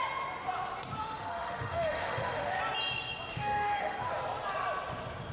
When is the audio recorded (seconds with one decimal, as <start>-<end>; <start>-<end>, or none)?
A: 0.0-1.0; 2.6-3.3; 4.1-5.3